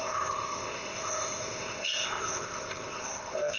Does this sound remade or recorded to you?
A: remade